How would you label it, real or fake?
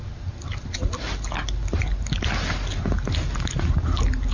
real